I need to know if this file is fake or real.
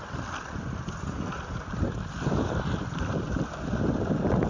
real